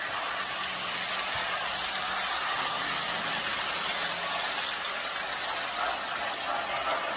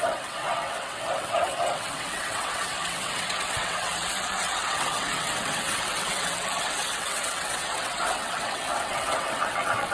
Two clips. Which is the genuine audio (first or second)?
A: first